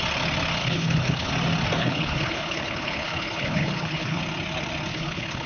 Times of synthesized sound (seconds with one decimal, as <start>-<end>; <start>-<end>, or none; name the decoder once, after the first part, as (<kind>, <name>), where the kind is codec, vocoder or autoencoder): 0.6-1.3 (codec, HILCodec); 1.8-4.2; 4.9-5.5

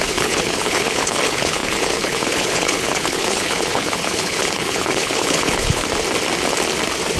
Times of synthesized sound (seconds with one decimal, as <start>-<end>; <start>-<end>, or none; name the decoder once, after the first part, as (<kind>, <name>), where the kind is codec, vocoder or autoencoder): 0.0-5.8 (codec, HILCodec)

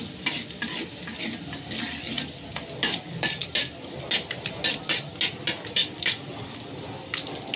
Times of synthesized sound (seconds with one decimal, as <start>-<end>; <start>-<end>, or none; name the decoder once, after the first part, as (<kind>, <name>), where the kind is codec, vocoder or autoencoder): none